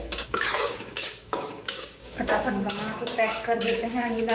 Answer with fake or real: fake